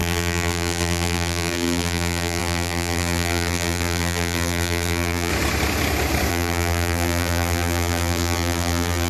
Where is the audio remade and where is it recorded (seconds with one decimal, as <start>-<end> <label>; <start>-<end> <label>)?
0.0-5.3 remade; 5.3-6.3 recorded; 6.3-9.1 remade